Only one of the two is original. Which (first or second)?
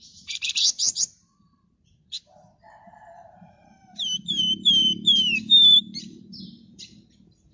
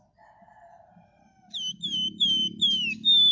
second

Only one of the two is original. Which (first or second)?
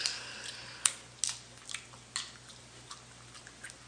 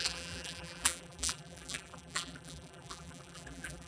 first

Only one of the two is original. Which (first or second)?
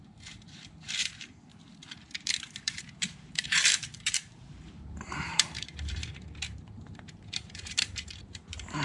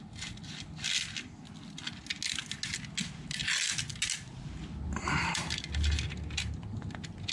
second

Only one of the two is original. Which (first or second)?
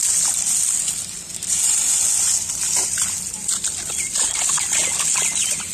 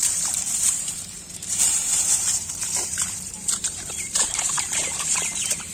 first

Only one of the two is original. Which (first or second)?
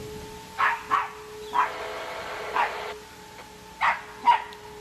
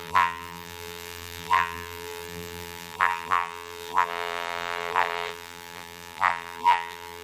first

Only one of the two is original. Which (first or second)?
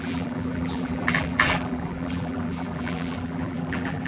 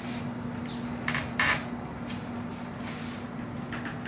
second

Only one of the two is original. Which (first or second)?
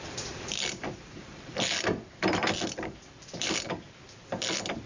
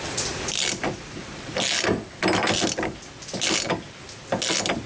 second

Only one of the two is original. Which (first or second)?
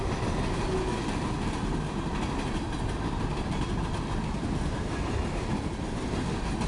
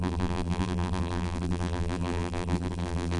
first